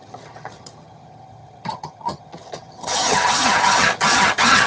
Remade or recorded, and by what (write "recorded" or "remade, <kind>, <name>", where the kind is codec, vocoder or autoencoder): remade, vocoder, HiFi-GAN